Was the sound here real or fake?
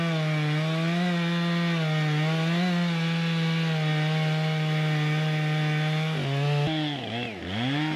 real